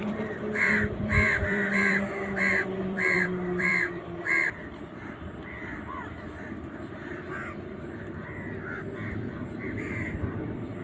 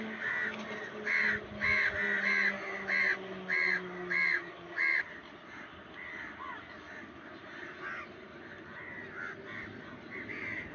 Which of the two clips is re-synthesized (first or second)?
first